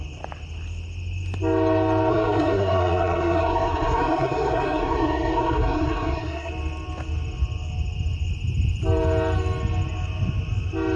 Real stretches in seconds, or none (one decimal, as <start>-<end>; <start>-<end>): 0.0-2.1; 6.5-11.0